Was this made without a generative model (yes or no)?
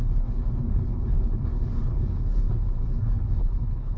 no